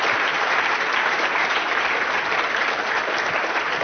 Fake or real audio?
fake